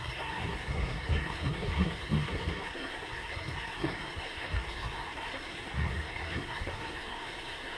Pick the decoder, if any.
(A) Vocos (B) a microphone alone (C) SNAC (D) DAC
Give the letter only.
C